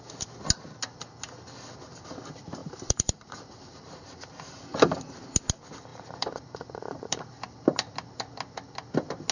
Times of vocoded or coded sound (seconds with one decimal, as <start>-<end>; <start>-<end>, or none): 2.6-4.1; 5.9-7.9